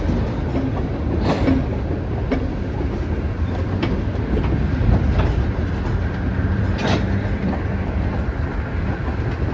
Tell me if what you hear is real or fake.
real